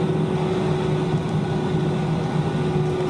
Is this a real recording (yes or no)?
yes